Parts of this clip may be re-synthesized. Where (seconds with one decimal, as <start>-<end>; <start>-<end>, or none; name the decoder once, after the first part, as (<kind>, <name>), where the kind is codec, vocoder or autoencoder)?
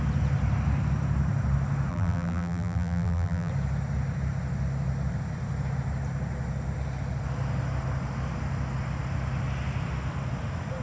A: 1.9-3.5 (vocoder, BigVGAN v2)